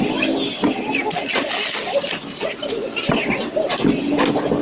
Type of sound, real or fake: real